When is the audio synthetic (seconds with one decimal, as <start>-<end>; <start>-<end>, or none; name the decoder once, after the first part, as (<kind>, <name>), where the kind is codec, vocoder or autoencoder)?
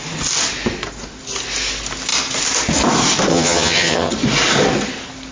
3.3-4.1 (vocoder, HiFi-GAN)